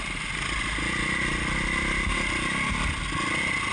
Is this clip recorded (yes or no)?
yes